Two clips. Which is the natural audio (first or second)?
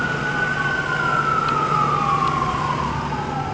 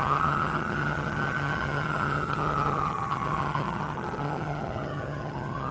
first